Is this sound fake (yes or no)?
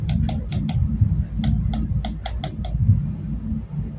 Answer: no